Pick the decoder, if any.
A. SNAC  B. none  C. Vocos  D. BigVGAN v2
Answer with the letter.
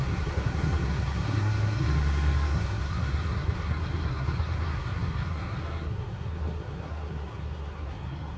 A